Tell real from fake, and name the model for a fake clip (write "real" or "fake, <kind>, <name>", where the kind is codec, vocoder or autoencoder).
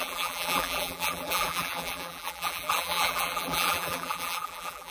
fake, vocoder, BigVGAN v2